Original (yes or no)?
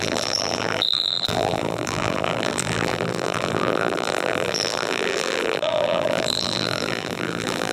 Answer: no